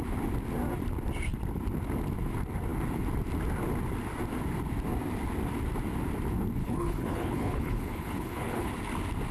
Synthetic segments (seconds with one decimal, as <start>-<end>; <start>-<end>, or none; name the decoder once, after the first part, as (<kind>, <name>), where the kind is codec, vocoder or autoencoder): 6.6-8.7 (codec, HILCodec)